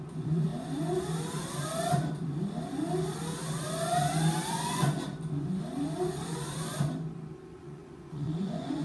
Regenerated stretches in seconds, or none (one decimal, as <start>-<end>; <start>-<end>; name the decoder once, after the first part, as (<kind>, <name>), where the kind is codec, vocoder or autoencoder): 0.0-0.5 (vocoder, Vocos); 4.5-4.9; 7.6-8.8